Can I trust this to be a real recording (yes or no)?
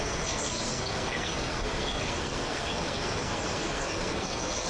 no